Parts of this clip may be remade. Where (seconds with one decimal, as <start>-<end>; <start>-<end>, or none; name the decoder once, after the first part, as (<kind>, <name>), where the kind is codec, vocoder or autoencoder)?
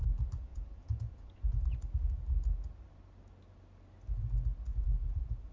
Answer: 0.5-1.8 (vocoder, Vocos); 4.7-5.5